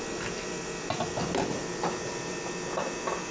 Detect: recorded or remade remade